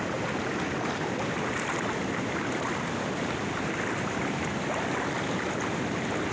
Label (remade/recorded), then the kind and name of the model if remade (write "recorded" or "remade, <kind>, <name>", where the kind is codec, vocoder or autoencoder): recorded